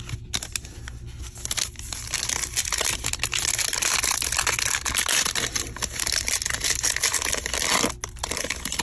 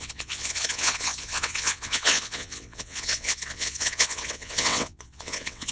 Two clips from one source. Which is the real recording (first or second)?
first